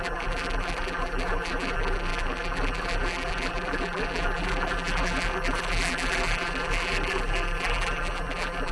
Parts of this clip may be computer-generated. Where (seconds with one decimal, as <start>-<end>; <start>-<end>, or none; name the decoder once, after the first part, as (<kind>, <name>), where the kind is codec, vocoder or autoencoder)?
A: 0.0-8.7 (vocoder, BigVGAN v2)